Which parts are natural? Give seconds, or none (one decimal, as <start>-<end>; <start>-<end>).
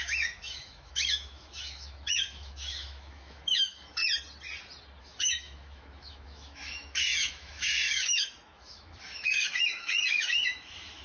4.0-5.0